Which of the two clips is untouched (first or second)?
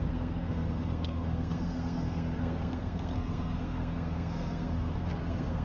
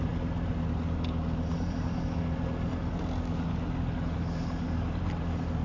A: second